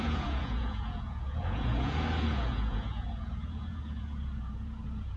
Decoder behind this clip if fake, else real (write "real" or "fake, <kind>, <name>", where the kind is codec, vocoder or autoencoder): fake, vocoder, Vocos